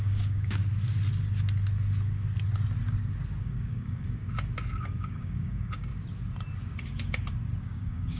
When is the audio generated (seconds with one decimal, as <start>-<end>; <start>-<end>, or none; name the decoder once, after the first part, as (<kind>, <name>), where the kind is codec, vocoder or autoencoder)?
0.0-0.6 (codec, DAC); 3.4-4.2; 4.7-5.9; 7.6-8.2